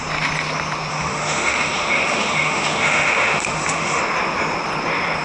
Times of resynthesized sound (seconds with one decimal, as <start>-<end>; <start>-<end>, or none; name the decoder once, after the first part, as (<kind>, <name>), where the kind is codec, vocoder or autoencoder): 0.9-4.0 (autoencoder, DAC-VAE)